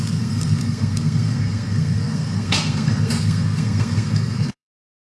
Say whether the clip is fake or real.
fake